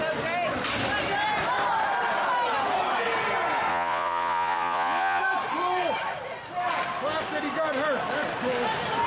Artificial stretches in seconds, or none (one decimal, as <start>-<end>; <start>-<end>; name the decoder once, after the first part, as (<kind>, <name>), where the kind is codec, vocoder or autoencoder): 3.7-5.2 (vocoder, Vocos)